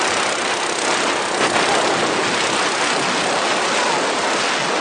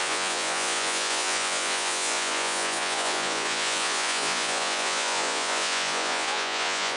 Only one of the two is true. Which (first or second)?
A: first